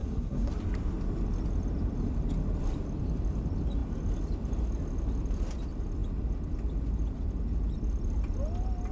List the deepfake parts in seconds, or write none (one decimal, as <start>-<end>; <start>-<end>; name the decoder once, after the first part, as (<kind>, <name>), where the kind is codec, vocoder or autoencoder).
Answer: 0.0-0.5 (codec, SNAC)

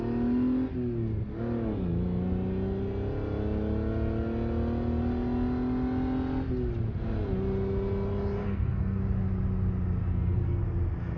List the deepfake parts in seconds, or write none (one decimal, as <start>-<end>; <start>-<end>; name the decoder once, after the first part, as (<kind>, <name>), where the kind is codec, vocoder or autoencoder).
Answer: 8.4-9.0 (codec, SNAC); 10.0-10.6